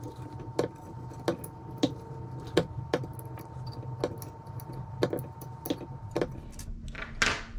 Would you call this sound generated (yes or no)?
no